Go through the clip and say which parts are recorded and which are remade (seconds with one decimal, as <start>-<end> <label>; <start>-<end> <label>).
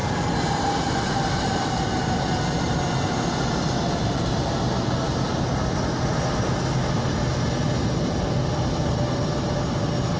0.0-10.2 recorded